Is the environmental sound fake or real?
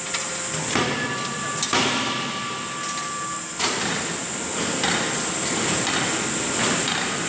real